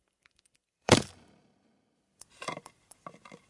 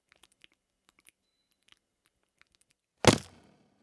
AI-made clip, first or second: first